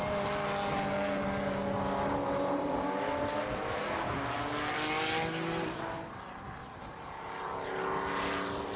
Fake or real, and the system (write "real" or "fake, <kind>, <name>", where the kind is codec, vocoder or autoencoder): real